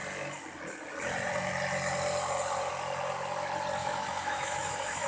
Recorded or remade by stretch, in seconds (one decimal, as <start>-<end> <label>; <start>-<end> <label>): 0.0-3.8 recorded; 3.8-5.1 remade